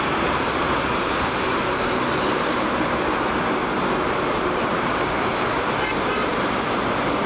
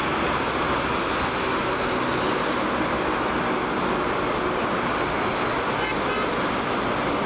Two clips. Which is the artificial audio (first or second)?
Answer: first